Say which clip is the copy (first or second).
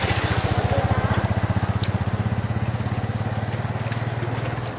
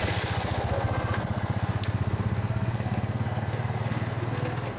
second